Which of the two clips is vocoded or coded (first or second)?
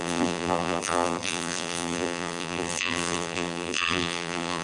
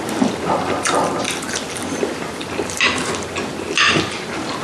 first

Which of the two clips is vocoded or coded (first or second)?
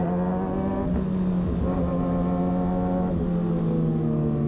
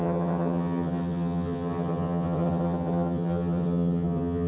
second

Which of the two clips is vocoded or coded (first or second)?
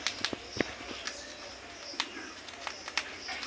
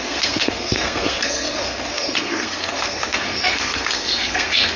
second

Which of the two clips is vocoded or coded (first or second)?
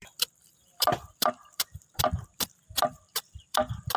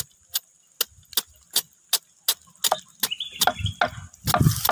first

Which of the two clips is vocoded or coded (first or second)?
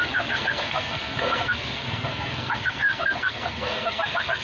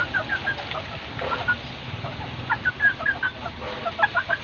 first